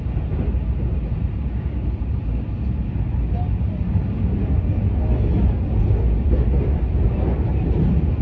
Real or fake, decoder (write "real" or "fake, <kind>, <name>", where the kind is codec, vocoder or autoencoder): real